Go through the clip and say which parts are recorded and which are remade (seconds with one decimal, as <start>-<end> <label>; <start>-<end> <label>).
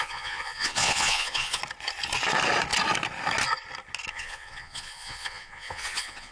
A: 0.0-1.6 remade; 1.6-4.1 recorded; 4.1-6.3 remade